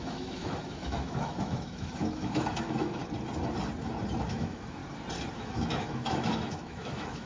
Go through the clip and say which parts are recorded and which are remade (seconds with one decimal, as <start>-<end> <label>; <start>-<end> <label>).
0.0-3.0 remade; 3.0-4.3 recorded; 4.3-4.8 remade; 4.8-5.3 recorded; 5.3-7.3 remade